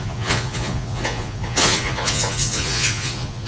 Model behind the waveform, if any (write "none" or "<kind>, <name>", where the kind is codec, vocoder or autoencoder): vocoder, Vocos